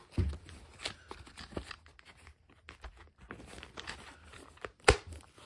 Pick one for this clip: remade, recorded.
recorded